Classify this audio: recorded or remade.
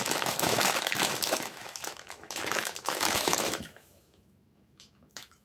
remade